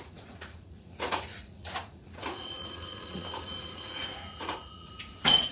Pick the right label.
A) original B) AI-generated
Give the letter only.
B